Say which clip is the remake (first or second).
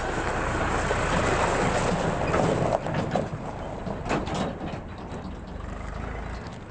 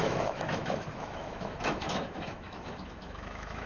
second